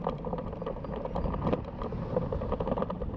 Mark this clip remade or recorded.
recorded